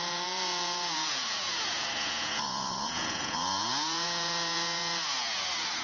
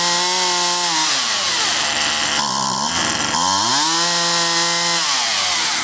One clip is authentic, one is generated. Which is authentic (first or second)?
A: second